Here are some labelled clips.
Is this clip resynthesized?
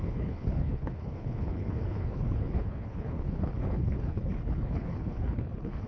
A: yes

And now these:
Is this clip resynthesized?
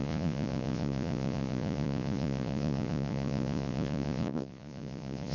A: yes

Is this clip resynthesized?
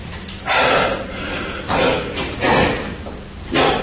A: no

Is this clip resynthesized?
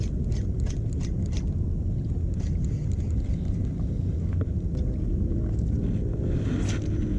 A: no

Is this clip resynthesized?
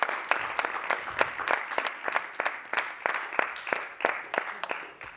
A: no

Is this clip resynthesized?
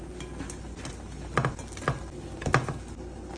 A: no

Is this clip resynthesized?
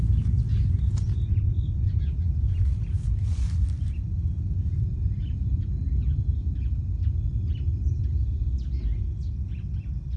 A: no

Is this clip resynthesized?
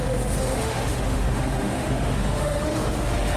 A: yes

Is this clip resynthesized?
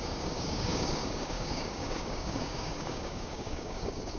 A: yes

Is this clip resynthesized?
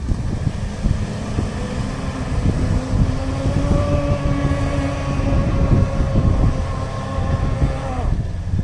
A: no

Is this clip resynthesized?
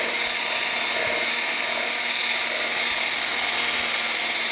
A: no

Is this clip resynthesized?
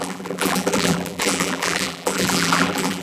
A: yes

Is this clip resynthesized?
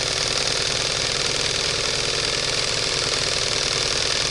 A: no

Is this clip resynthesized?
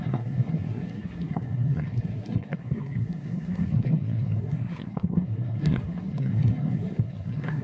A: yes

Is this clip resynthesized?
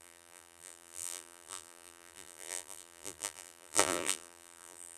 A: yes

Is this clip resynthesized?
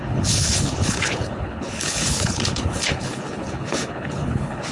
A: yes